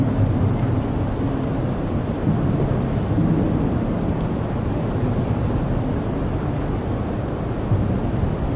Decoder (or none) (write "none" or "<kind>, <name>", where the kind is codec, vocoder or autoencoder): none